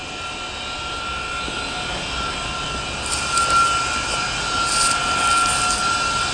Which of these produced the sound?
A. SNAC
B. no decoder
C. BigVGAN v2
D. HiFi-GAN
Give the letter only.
B